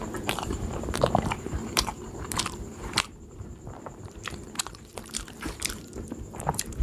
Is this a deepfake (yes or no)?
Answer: yes